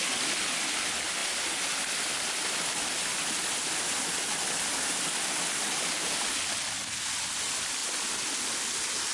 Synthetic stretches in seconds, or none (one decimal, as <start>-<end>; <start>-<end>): none